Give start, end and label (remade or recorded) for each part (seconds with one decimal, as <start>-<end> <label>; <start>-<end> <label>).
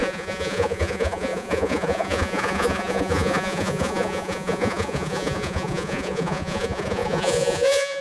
0.0-8.0 remade